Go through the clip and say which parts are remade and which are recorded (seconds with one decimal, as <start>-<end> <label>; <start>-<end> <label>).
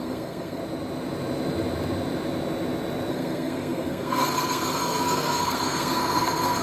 0.0-0.6 remade; 0.6-3.1 recorded; 3.1-6.6 remade